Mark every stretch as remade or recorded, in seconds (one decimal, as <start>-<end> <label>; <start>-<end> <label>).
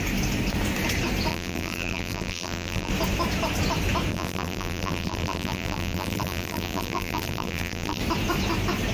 0.0-1.3 recorded; 1.3-2.9 remade; 2.9-4.1 recorded; 4.1-8.0 remade; 8.0-8.9 recorded